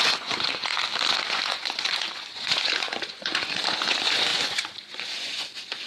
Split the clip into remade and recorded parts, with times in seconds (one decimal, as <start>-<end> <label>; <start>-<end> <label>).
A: 0.0-0.7 remade; 0.7-1.3 recorded; 1.3-5.9 remade